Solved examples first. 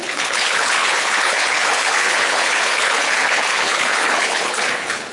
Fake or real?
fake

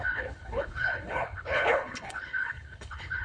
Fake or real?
fake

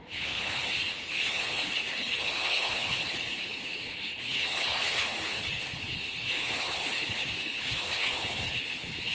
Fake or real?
fake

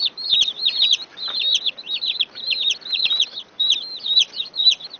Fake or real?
real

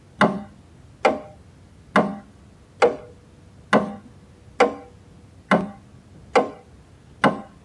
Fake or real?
real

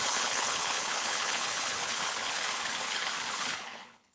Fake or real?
fake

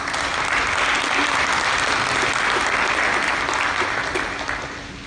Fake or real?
real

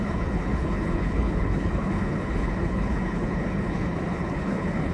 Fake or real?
fake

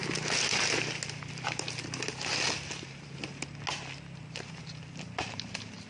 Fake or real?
real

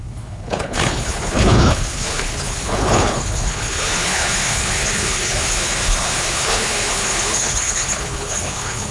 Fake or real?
fake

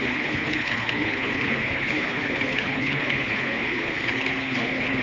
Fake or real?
fake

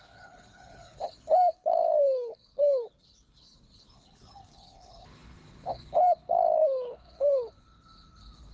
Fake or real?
fake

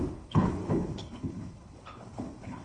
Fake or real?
fake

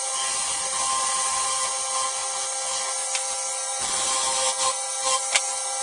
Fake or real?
real